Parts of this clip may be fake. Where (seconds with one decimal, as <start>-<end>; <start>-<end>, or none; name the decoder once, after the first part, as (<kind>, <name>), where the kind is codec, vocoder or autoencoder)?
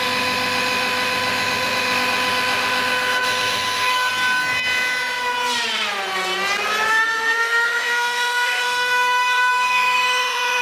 0.0-4.1 (autoencoder, DAC-VAE); 6.9-10.6